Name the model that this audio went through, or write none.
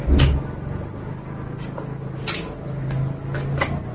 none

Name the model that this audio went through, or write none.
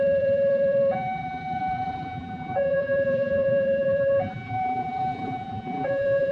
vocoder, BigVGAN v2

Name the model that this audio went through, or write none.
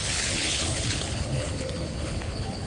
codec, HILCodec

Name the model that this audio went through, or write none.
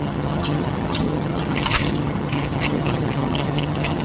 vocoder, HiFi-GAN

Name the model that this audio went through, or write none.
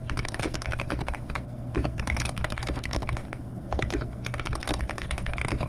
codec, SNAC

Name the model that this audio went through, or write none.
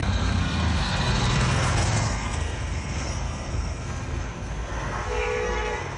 codec, SNAC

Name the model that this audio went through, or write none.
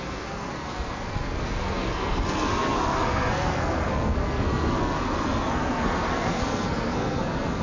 codec, SNAC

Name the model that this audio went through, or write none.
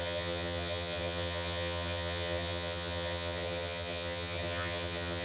vocoder, HiFi-GAN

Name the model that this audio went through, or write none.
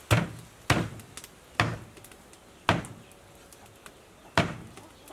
none